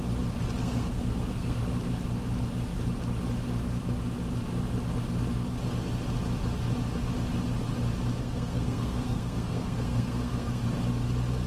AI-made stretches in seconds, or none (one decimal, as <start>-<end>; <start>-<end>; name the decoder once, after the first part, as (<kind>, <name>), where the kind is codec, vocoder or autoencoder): 0.6-1.6 (codec, SNAC); 8.2-10.6